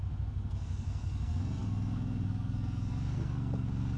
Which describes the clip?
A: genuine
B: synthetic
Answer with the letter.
B